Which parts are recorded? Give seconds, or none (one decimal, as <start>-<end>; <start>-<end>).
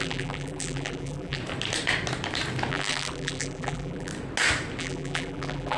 1.4-2.7; 4.1-4.8